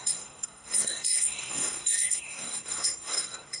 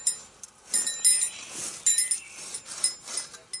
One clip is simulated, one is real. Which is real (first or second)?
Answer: second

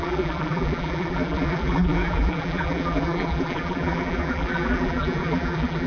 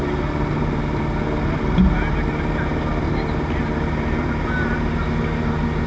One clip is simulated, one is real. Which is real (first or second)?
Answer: second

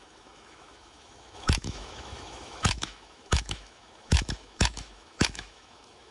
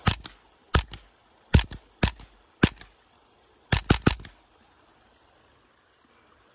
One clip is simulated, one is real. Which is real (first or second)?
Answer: second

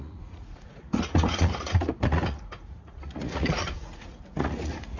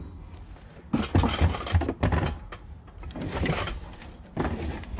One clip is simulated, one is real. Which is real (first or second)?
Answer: second